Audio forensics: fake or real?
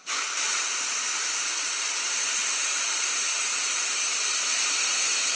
fake